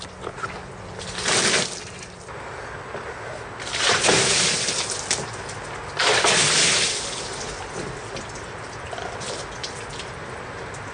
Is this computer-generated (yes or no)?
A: no